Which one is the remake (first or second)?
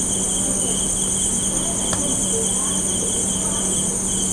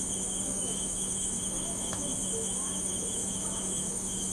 second